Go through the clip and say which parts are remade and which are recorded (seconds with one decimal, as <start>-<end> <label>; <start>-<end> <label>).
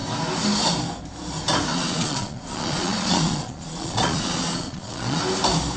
0.0-1.7 recorded; 1.7-5.2 remade; 5.2-5.8 recorded